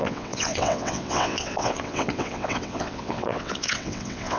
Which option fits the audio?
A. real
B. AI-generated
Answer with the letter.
B